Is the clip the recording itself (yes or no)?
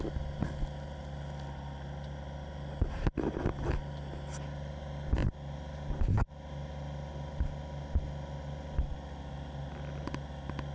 yes